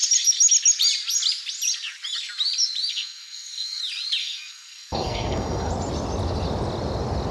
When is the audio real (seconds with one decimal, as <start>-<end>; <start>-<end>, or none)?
0.0-2.9; 3.8-4.2; 5.7-7.3

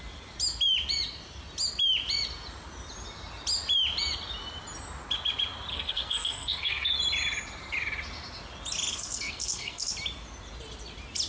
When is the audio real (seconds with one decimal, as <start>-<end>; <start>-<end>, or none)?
0.0-5.7; 6.9-8.9; 9.9-11.3

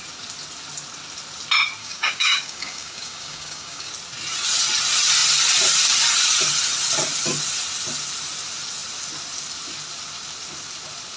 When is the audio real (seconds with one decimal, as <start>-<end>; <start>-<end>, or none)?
0.0-1.8; 3.9-11.2

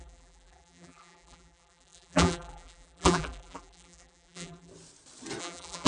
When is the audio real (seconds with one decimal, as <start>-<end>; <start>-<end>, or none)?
4.7-5.4

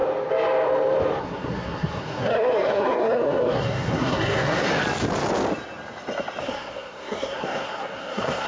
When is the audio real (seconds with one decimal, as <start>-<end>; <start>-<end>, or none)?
0.0-1.2; 4.7-6.4